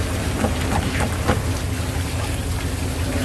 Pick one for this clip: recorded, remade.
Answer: recorded